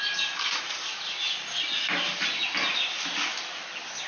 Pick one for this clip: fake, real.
real